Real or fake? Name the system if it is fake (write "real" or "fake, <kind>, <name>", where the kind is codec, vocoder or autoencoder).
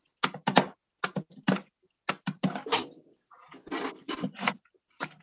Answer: real